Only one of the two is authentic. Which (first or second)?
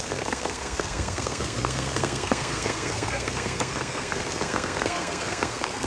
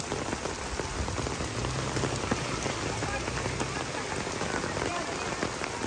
second